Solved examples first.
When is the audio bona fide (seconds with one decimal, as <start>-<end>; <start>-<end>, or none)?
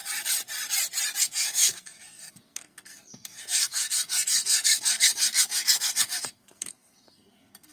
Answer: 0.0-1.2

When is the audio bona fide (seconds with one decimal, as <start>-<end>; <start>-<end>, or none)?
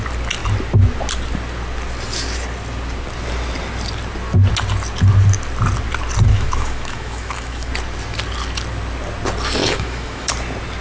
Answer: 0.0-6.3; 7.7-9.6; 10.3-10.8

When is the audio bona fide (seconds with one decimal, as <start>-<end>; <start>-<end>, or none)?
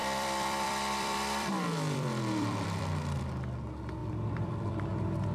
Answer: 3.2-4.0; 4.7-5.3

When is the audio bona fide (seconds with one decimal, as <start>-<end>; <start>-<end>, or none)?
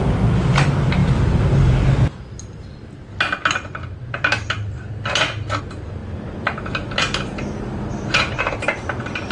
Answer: 0.0-9.3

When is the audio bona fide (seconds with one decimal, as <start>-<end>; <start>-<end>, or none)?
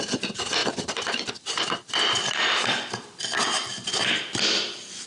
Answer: 0.0-0.6; 3.7-5.1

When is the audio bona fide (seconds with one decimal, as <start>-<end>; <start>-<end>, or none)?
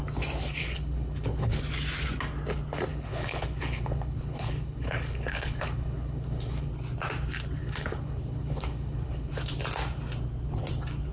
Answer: 0.0-0.6; 1.6-2.9; 6.7-7.6; 9.3-11.1